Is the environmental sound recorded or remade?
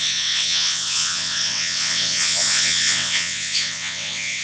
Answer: remade